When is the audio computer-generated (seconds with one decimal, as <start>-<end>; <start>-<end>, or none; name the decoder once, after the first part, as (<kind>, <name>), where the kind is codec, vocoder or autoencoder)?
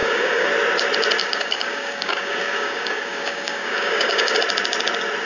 0.0-0.5 (codec, DAC); 1.2-4.4